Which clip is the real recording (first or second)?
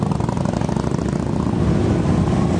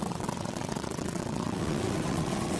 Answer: first